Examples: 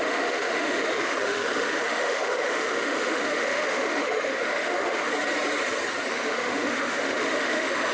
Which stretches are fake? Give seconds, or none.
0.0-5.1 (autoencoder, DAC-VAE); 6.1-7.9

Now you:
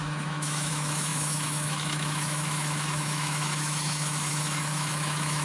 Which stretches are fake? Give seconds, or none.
0.0-5.4 (autoencoder, DAC-VAE)

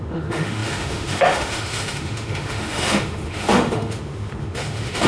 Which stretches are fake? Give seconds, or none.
0.0-5.1 (autoencoder, DAC-VAE)

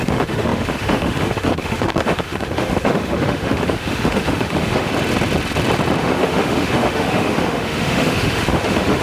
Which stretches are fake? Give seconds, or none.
0.0-4.9 (autoencoder, DAC-VAE); 6.0-9.0

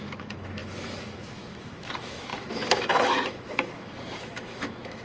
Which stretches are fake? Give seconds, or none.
0.0-5.0 (autoencoder, DAC-VAE)